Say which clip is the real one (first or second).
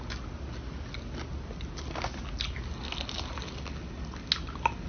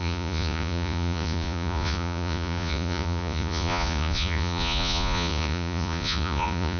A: first